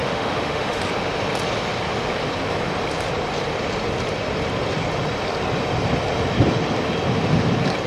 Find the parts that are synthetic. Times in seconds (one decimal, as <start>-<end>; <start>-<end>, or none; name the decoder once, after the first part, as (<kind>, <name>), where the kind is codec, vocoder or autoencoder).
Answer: 0.0-0.8 (autoencoder, DAC-VAE)